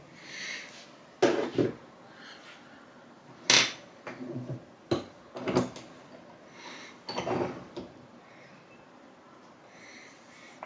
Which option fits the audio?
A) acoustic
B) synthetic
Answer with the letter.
A